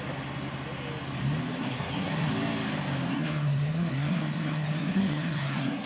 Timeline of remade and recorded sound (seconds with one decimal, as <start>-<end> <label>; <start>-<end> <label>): 0.0-1.6 recorded; 1.6-2.3 remade; 2.3-3.1 recorded; 3.1-5.9 remade